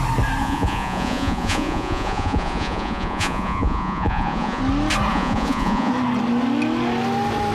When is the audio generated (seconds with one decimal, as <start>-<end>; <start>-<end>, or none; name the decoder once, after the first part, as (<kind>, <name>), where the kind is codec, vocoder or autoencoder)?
0.4-4.6 (vocoder, Vocos); 5.1-5.9